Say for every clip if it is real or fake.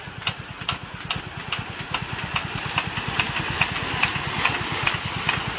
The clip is real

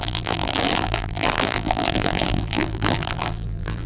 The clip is fake